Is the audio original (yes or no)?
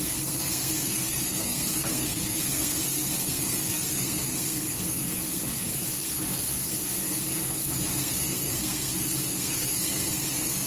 no